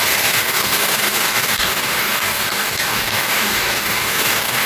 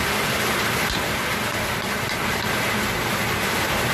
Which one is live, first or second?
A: second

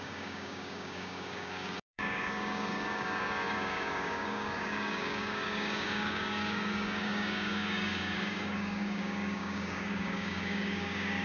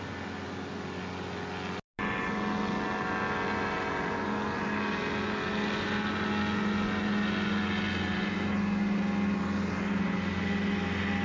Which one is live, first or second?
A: second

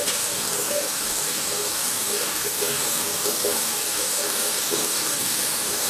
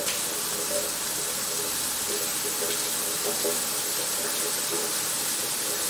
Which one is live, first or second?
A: second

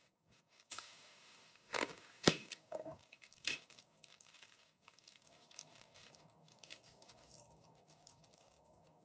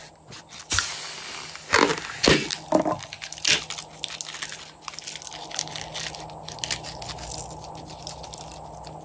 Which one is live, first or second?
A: second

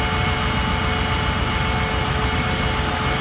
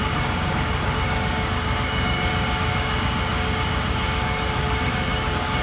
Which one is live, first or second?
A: first